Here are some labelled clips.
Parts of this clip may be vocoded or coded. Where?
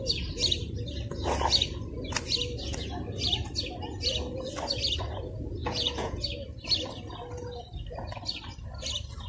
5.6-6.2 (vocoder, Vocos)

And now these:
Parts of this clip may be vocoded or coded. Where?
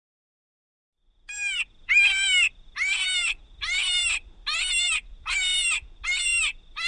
none